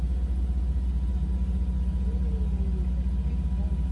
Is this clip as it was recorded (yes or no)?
yes